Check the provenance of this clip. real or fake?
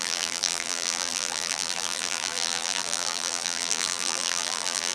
fake